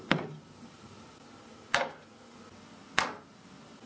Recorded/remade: recorded